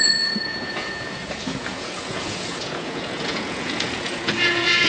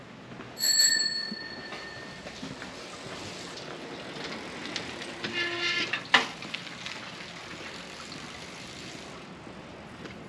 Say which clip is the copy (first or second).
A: first